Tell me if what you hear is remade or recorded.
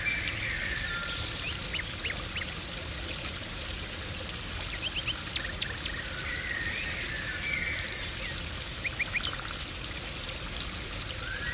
recorded